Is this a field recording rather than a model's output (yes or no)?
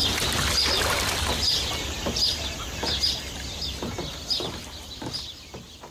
yes